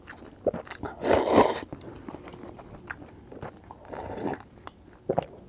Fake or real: real